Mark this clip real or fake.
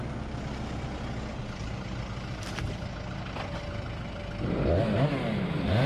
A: real